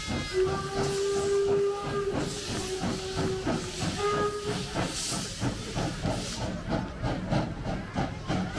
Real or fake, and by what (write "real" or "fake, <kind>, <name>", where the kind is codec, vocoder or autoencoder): real